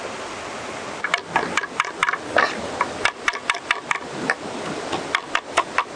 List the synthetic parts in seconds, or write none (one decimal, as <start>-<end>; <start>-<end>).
none